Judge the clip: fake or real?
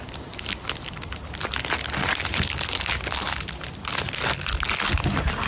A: real